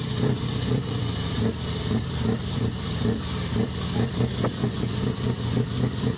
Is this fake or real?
fake